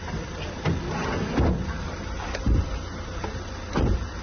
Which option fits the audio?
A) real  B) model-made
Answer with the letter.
A